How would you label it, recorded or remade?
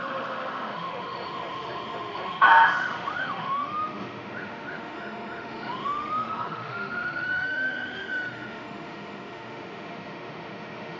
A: remade